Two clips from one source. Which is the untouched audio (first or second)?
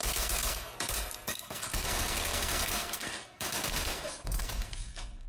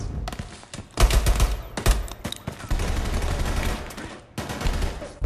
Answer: second